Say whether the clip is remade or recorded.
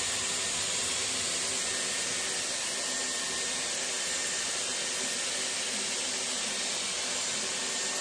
recorded